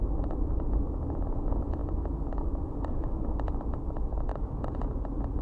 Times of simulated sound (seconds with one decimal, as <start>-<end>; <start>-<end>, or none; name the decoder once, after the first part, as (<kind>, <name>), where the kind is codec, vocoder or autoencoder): 0.0-4.3 (autoencoder, DAC-VAE)